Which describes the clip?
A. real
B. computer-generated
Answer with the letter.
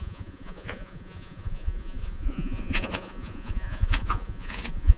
B